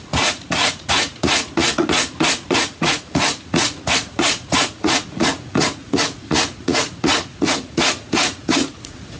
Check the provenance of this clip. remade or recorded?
remade